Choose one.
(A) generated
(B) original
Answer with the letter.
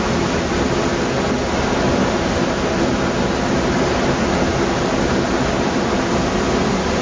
B